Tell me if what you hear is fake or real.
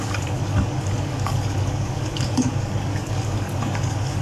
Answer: fake